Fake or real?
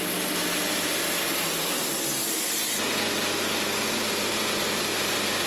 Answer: real